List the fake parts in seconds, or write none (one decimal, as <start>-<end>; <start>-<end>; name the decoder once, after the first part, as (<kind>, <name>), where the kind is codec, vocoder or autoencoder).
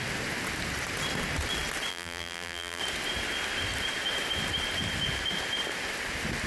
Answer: 1.9-2.8 (vocoder, BigVGAN v2)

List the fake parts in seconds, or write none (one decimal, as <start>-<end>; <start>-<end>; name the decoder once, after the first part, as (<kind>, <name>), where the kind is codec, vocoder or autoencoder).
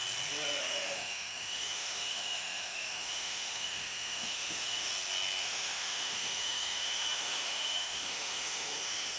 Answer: 0.6-4.9 (autoencoder, DAC-VAE); 5.4-9.2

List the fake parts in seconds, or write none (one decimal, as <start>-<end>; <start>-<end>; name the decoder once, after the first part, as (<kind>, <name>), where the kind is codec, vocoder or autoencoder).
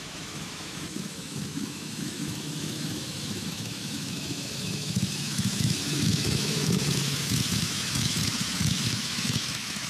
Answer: 0.0-9.9 (autoencoder, DAC-VAE)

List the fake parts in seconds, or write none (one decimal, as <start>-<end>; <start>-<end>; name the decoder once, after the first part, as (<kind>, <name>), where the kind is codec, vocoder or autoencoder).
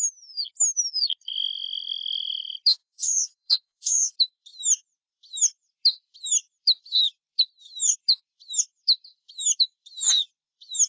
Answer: 2.7-4.1 (codec, DAC)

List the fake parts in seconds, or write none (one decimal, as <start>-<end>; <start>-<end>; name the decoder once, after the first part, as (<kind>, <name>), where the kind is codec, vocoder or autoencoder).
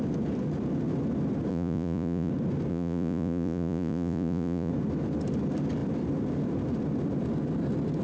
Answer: 1.5-2.3 (vocoder, Vocos); 2.7-4.7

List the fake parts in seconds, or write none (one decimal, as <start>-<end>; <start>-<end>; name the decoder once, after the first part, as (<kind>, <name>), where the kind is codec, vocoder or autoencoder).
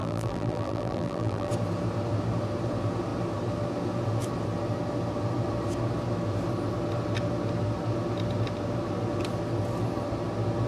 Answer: 0.0-1.5 (vocoder, BigVGAN v2)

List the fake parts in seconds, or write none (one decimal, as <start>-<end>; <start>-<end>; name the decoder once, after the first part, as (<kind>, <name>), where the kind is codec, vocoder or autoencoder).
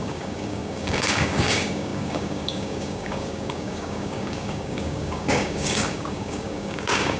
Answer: 0.0-7.2 (codec, DAC)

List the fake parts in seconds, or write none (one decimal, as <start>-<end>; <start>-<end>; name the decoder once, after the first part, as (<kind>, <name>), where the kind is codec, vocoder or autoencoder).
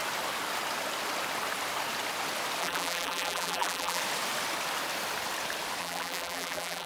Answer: 2.6-4.0 (vocoder, BigVGAN v2); 5.8-6.9